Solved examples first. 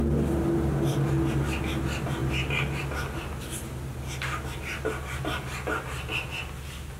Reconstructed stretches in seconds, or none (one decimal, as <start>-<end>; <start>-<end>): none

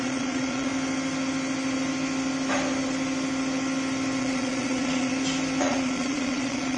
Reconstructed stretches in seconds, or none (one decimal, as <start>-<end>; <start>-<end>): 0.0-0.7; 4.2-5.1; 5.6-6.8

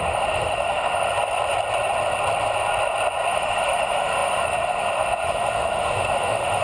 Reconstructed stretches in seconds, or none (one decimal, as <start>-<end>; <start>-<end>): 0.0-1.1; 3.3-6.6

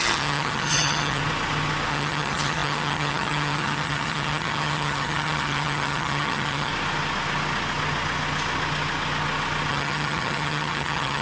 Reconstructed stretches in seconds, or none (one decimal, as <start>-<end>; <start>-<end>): 0.0-1.2; 1.9-6.7; 9.7-11.2

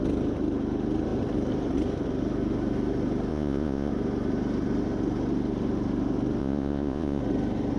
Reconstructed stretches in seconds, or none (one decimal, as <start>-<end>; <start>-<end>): 3.3-3.9; 6.4-7.2

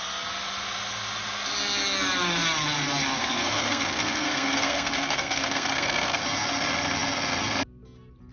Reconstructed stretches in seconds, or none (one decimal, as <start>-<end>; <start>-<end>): 3.2-6.2

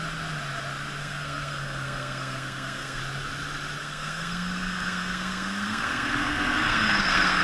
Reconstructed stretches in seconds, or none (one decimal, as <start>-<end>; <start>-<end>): 1.0-3.0; 3.8-7.4